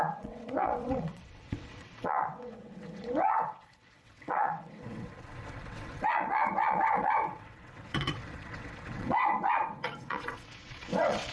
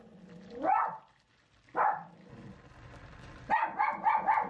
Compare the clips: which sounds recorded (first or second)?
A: second